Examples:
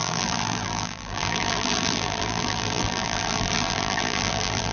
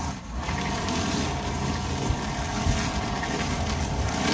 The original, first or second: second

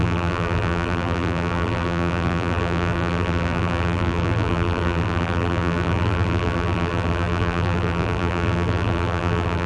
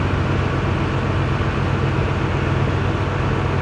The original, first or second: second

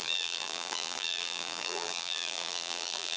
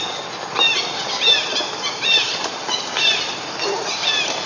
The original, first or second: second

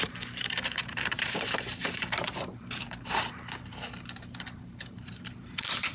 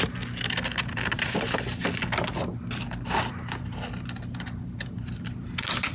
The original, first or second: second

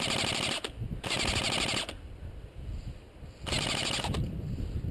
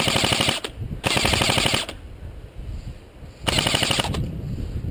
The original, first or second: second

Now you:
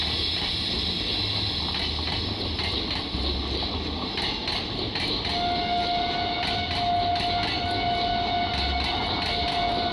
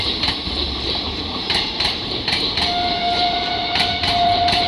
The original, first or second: first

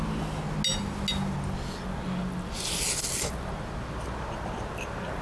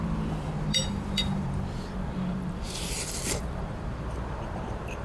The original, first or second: first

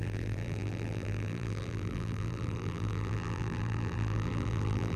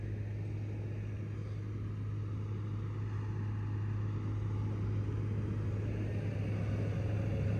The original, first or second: second